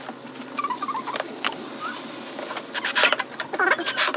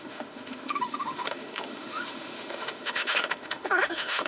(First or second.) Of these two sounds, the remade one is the second